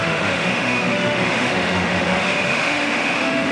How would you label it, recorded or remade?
remade